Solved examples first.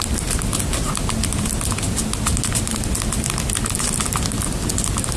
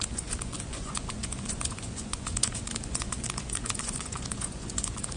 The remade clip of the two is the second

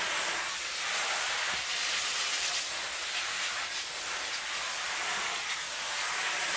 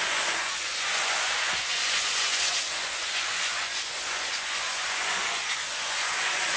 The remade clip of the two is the second